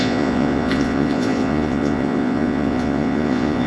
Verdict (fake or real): fake